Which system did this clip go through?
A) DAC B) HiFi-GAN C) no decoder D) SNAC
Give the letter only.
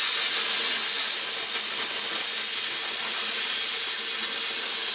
C